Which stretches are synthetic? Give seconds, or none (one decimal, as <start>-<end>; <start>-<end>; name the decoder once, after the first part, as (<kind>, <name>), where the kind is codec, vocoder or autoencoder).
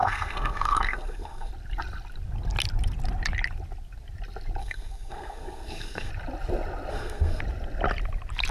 0.0-1.5 (codec, SNAC); 4.6-6.1; 6.9-7.4